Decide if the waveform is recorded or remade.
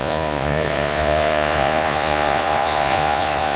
remade